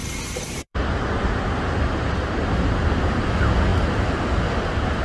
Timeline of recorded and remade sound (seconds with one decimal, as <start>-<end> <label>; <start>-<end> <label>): 0.0-3.0 remade; 3.0-3.7 recorded; 3.7-5.0 remade